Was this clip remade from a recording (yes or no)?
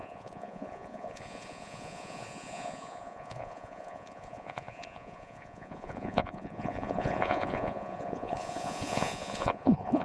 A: yes